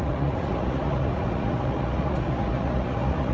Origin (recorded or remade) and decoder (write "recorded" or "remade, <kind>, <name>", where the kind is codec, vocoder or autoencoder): remade, vocoder, Vocos